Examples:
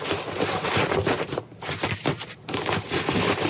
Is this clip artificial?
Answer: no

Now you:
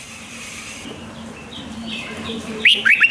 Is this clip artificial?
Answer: yes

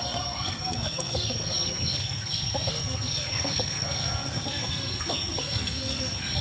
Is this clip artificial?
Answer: yes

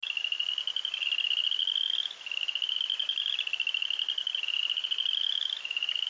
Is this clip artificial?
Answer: no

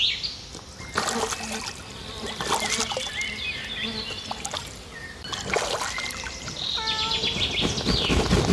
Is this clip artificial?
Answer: no